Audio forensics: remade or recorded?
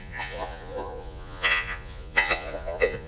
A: remade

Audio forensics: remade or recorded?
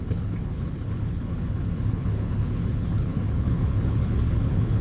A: remade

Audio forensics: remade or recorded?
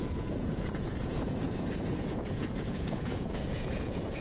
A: remade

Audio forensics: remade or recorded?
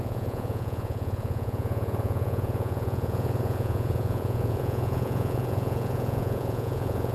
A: remade